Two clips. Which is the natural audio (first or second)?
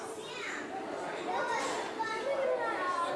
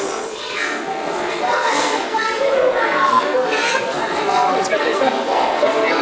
first